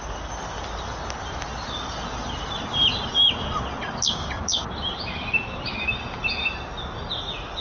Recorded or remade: recorded